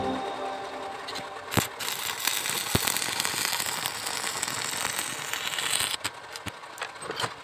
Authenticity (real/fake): real